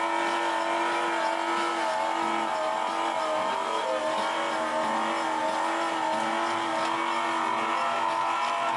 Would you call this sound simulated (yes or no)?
no